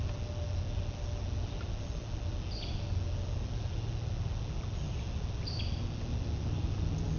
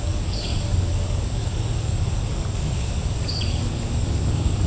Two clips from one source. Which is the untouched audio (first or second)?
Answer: first